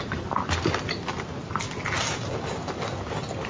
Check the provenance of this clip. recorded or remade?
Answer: recorded